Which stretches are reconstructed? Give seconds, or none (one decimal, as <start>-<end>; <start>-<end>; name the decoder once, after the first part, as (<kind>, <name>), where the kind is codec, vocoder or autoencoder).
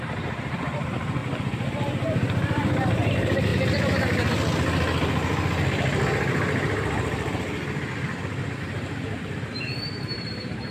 0.0-1.2 (vocoder, BigVGAN v2); 3.1-3.5; 8.6-10.7